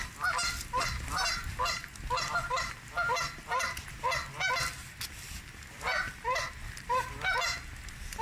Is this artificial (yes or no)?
no